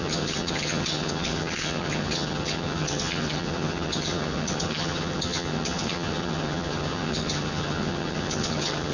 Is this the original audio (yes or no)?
no